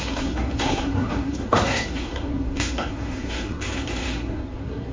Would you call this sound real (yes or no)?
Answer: no